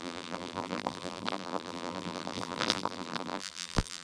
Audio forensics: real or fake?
fake